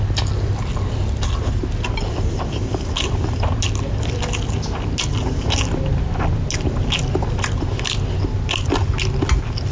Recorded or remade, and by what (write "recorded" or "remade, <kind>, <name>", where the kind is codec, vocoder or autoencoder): recorded